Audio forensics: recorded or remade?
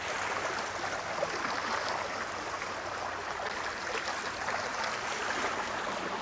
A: recorded